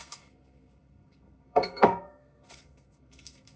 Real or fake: fake